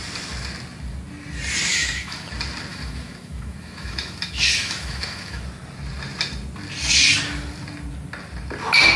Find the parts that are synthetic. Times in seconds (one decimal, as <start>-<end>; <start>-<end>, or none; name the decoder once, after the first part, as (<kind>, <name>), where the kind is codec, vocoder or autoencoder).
1.7-2.3 (autoencoder, DAC-VAE); 2.7-5.4